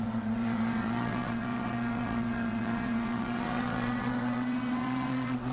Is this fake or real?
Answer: fake